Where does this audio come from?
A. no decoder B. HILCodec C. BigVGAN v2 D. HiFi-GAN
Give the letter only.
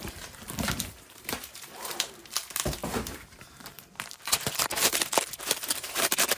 C